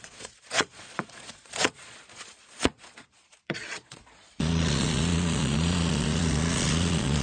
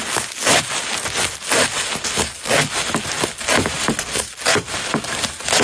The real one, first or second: second